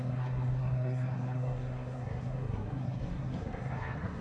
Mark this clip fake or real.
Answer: fake